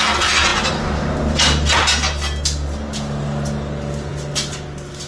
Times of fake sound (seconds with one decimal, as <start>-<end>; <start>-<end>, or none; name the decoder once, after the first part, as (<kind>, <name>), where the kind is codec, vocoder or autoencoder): none